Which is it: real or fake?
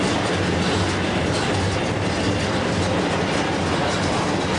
real